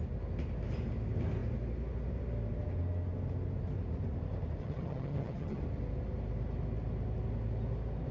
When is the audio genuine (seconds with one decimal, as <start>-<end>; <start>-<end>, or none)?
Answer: 0.0-4.6; 5.6-8.1